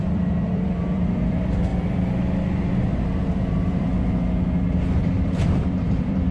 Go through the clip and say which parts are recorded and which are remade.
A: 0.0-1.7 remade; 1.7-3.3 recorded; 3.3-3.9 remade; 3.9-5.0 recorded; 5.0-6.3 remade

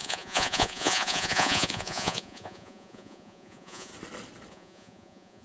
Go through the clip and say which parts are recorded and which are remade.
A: 0.0-3.9 remade; 3.9-4.5 recorded; 4.5-5.4 remade

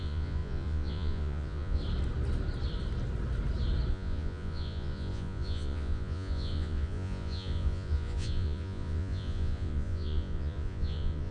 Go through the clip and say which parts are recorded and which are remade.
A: 0.0-1.8 remade; 1.8-3.9 recorded; 3.9-11.3 remade

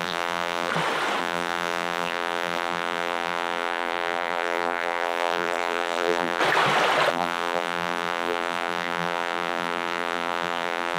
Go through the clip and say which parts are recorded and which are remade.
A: 0.0-0.7 remade; 0.7-1.2 recorded; 1.2-6.4 remade; 6.4-7.1 recorded; 7.1-11.0 remade

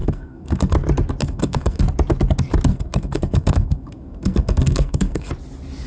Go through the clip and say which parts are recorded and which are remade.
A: 0.0-0.7 remade; 0.7-1.2 recorded; 1.2-1.8 remade; 1.8-2.7 recorded; 2.7-5.3 remade; 5.3-5.9 recorded

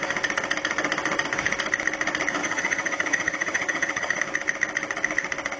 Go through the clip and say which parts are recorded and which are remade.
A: 0.0-2.4 recorded; 2.4-4.2 remade; 4.2-5.6 recorded

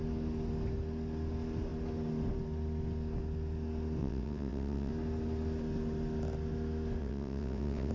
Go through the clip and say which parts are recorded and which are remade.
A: 0.0-4.0 recorded; 4.0-4.9 remade; 4.9-7.0 recorded; 7.0-7.9 remade